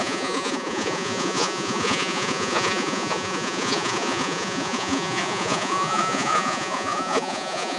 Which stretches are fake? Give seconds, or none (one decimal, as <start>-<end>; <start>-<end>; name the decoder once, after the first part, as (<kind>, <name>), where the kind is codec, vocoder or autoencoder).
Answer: 0.0-7.8 (vocoder, Vocos)